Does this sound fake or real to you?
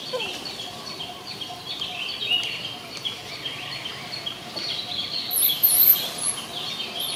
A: real